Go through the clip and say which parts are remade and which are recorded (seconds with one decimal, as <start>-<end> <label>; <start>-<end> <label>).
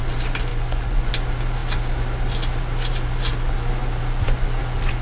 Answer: 0.0-0.5 recorded; 0.5-1.1 remade; 1.1-5.0 recorded